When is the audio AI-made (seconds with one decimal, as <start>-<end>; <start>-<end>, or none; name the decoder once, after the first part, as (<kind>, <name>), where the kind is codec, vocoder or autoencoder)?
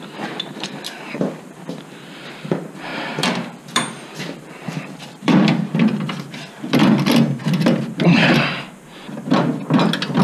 0.0-6.8 (vocoder, BigVGAN v2); 7.4-9.3